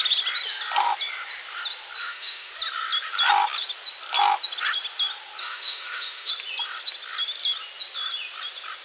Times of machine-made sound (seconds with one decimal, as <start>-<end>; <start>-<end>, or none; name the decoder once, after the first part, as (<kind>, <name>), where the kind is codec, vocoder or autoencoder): 2.0-2.5 (autoencoder, DAC-VAE); 5.4-6.3